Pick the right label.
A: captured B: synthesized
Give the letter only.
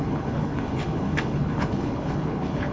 B